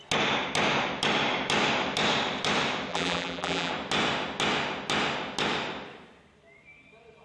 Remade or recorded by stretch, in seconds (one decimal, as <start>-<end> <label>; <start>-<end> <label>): 0.0-2.9 recorded; 2.9-3.7 remade; 3.7-7.2 recorded